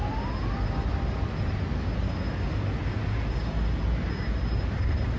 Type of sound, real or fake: real